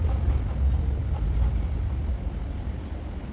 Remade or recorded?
recorded